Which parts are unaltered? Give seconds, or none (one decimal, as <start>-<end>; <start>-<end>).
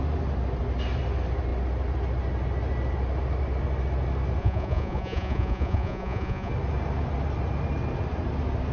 0.0-4.4; 6.5-8.7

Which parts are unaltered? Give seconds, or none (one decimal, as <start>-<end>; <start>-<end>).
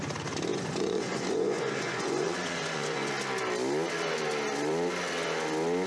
0.0-0.5; 3.1-5.9